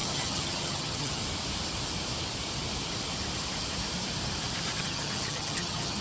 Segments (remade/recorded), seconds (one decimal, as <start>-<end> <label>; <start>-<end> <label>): 0.0-1.2 remade; 1.2-4.8 recorded; 4.8-6.0 remade